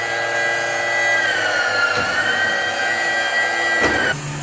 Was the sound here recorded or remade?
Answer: recorded